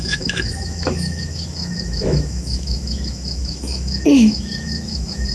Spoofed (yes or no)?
yes